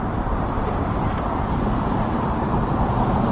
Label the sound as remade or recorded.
remade